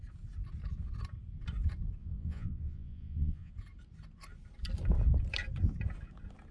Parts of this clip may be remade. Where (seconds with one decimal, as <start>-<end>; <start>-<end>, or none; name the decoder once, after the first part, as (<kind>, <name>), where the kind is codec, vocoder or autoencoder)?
2.0-3.5 (vocoder, Vocos)